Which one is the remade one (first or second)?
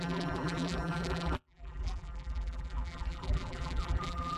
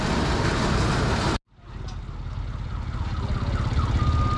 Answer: first